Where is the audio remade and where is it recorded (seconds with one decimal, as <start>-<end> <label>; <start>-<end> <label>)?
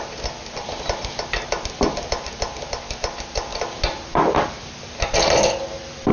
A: 0.0-6.1 recorded